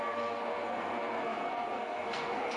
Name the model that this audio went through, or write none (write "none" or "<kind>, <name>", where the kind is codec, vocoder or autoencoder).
codec, SNAC